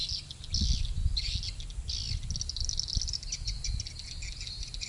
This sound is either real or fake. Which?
real